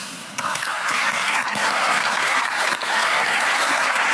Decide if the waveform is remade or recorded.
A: remade